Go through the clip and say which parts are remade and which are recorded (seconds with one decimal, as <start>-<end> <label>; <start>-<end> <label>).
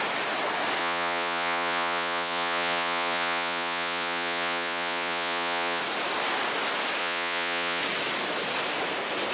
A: 0.0-0.8 recorded; 0.8-5.8 remade; 5.8-7.0 recorded; 7.0-7.8 remade; 7.8-9.3 recorded